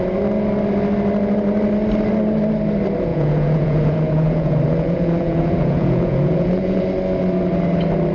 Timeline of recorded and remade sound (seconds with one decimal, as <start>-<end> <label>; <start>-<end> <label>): 0.0-3.1 recorded; 3.1-6.8 remade; 6.8-8.1 recorded